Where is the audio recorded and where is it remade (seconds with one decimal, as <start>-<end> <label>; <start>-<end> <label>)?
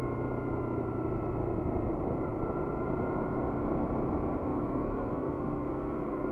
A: 0.0-4.4 recorded; 4.4-6.3 remade